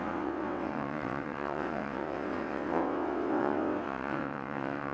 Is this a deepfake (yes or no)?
yes